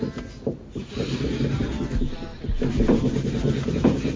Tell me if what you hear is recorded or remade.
recorded